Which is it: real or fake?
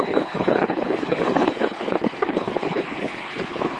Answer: fake